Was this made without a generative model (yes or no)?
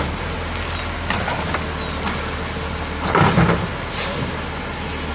yes